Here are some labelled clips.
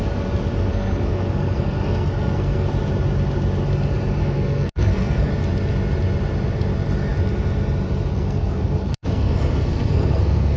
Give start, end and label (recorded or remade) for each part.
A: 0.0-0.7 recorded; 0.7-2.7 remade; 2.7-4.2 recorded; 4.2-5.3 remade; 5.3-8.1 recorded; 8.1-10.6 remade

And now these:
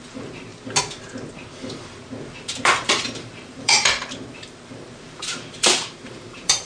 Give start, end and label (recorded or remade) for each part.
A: 0.0-0.5 remade; 0.5-2.3 recorded; 2.3-6.7 remade

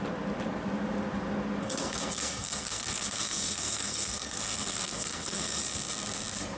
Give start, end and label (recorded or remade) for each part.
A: 0.0-1.6 recorded; 1.6-5.6 remade; 5.6-6.6 recorded

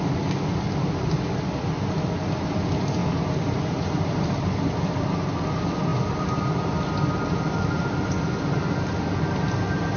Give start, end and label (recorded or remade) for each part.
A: 0.0-3.0 recorded; 3.0-4.5 remade; 4.5-10.0 recorded

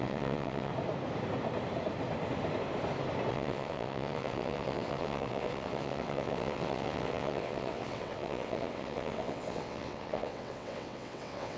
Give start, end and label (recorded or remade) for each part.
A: 0.0-0.7 remade; 0.7-3.3 recorded; 3.3-11.6 remade

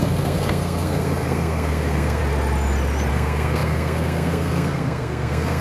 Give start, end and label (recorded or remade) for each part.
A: 0.0-2.2 remade; 2.2-3.1 recorded; 3.1-5.6 remade

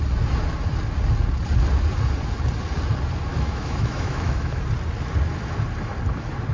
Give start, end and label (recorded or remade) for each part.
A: 0.0-3.3 recorded; 3.3-4.6 remade; 4.6-6.5 recorded

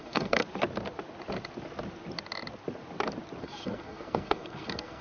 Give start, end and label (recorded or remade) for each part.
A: 0.0-0.4 remade; 0.4-3.4 recorded; 3.4-5.0 remade